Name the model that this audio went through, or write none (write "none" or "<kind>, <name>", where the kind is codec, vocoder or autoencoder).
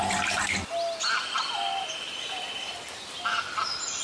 none